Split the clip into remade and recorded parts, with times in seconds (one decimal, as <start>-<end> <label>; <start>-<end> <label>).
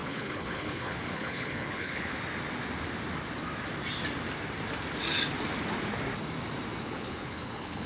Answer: 0.0-2.1 remade; 2.1-6.8 recorded; 6.8-7.9 remade